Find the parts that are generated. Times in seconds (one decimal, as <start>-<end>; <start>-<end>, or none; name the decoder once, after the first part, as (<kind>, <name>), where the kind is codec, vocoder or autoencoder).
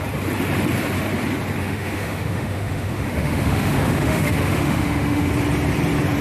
1.6-5.3 (autoencoder, DAC-VAE)